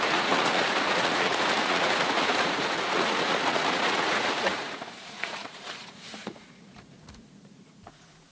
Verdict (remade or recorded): remade